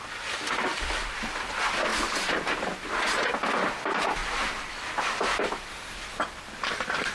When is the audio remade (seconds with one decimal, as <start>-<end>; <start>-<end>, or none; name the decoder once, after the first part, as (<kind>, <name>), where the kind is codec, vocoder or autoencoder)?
0.7-1.5 (vocoder, BigVGAN v2); 4.2-7.1